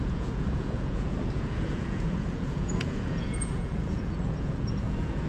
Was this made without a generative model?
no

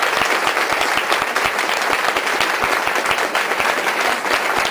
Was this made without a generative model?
yes